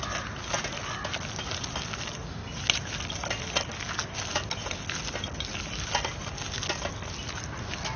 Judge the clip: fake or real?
real